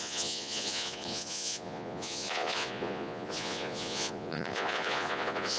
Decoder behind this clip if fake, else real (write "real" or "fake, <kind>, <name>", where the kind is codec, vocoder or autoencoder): fake, vocoder, Vocos